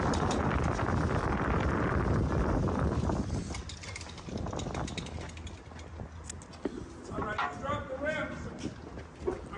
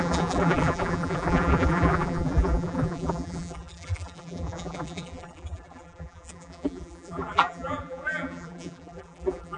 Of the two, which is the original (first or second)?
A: first